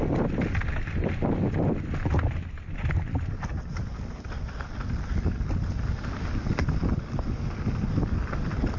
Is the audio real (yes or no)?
yes